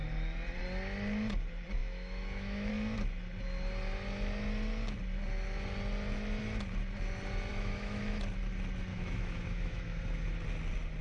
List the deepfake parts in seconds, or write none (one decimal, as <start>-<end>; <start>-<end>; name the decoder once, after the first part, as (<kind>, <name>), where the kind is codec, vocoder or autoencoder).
1.8-2.7 (autoencoder, DAC-VAE); 7.5-8.0; 8.9-10.0